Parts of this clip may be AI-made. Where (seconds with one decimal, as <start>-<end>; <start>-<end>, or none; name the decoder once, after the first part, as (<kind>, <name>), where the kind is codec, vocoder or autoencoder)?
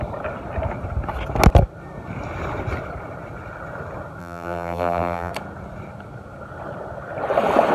4.2-5.3 (vocoder, BigVGAN v2)